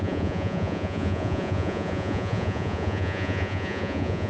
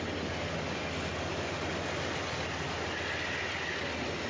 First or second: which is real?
second